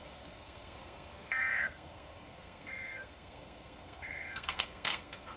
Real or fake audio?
fake